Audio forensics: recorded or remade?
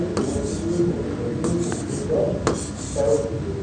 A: recorded